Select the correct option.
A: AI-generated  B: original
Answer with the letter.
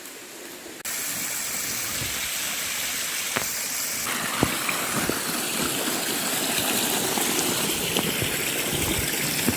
B